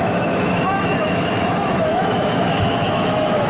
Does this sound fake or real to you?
fake